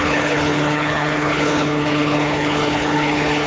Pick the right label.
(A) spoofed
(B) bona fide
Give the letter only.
A